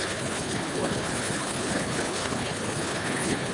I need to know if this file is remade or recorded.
remade